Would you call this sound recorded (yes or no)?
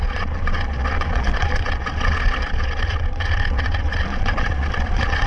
no